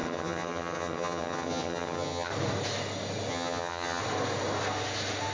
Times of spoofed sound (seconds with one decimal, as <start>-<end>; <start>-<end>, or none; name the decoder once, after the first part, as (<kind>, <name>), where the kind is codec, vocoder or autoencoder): 0.0-2.3 (vocoder, HiFi-GAN); 3.3-4.0

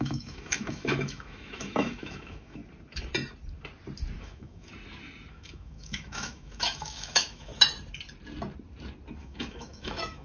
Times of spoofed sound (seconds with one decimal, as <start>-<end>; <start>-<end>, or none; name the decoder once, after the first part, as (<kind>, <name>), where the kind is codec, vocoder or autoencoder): 0.0-2.6 (autoencoder, DAC-VAE); 4.2-4.7; 5.3-7.5; 9.2-10.2

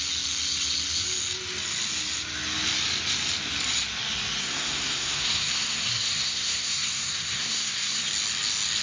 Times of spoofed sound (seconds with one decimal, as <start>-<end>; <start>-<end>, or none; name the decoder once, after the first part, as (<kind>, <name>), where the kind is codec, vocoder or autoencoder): 4.4-8.1 (codec, SNAC)